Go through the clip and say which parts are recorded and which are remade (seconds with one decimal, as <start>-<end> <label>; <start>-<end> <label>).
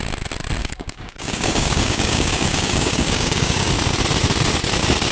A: 0.0-0.6 recorded; 0.6-3.7 remade; 3.7-5.1 recorded